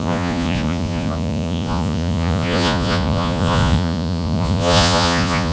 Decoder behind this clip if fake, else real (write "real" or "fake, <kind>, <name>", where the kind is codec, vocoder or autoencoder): fake, vocoder, Vocos